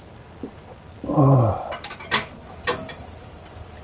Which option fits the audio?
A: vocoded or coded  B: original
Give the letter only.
B